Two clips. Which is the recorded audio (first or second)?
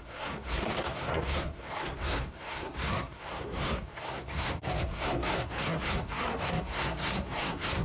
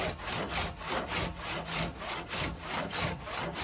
second